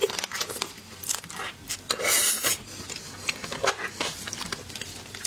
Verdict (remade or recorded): recorded